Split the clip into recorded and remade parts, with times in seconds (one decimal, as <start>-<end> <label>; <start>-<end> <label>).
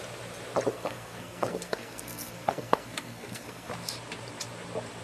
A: 0.0-0.7 recorded; 0.7-3.7 remade; 3.7-5.0 recorded